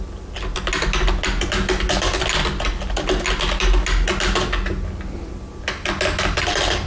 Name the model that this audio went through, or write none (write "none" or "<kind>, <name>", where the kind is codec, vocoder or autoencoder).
none